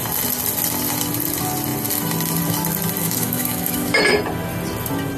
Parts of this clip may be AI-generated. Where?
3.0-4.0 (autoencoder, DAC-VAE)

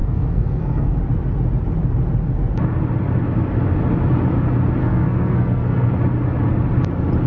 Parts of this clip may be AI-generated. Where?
0.0-1.0 (codec, SNAC); 4.8-5.9

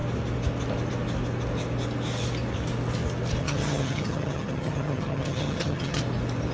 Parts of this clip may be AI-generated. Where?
3.4-6.0 (vocoder, HiFi-GAN)

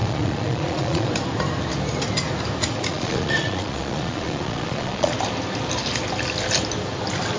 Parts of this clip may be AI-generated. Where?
0.0-1.1 (vocoder, Vocos); 2.9-5.1